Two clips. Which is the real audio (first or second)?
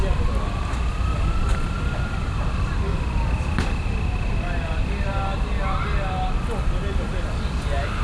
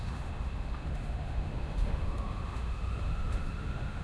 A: first